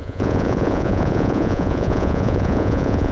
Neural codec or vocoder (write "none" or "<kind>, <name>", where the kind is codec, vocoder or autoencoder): vocoder, Vocos